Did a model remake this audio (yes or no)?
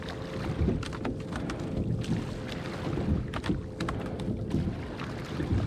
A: no